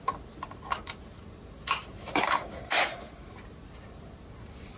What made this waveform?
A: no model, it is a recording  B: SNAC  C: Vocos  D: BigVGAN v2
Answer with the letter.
A